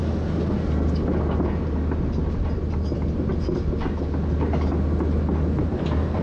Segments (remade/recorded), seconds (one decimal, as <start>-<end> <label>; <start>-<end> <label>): 0.0-6.2 recorded